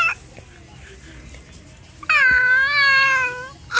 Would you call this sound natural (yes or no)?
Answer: yes